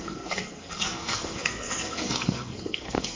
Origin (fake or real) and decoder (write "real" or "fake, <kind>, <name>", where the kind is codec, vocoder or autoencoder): fake, codec, SNAC